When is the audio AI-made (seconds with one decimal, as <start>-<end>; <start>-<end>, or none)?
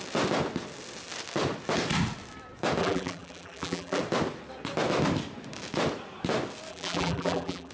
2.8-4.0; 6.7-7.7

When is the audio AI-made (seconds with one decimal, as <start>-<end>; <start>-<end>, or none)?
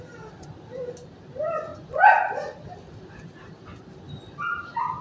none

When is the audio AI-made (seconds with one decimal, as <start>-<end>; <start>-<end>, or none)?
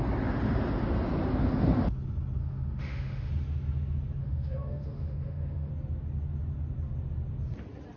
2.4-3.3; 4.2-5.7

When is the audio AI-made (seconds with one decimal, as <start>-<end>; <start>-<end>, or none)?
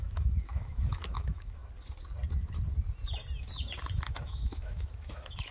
0.0-1.6; 4.2-5.5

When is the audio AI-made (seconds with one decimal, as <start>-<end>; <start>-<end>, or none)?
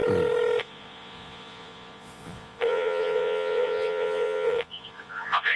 0.6-5.6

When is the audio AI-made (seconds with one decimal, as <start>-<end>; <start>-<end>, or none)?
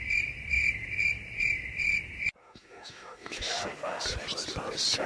2.4-4.0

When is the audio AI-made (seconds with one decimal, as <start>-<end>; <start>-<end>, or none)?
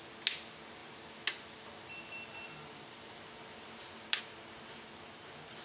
none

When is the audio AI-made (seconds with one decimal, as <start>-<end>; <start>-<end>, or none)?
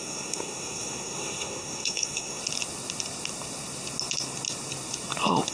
0.0-2.4